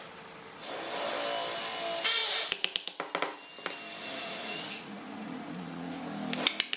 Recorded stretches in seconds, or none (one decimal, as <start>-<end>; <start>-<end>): 0.0-4.0; 6.0-6.8